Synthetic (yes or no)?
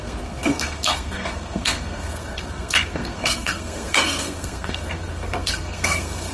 yes